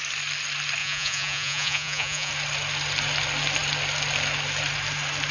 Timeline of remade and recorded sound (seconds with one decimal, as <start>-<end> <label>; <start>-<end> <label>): 0.0-0.8 recorded; 0.8-2.3 remade; 2.3-5.3 recorded